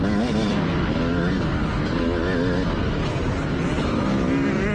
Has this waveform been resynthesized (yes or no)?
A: no